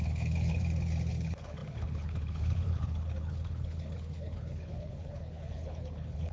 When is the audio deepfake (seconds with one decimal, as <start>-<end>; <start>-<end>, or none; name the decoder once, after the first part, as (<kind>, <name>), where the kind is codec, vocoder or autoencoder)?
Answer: 0.0-0.6 (codec, HILCodec); 1.1-6.3